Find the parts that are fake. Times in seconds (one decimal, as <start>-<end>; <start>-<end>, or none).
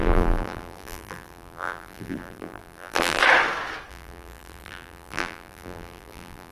0.0-3.2; 3.9-6.5